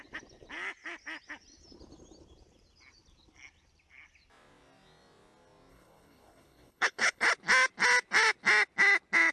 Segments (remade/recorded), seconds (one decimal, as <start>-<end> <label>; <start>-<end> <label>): 0.0-5.7 recorded; 5.7-7.3 remade; 7.3-9.3 recorded